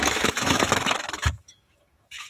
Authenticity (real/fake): fake